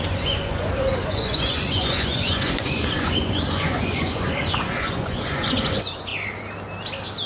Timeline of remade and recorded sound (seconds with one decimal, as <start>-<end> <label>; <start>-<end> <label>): 0.0-6.1 remade; 6.1-7.3 recorded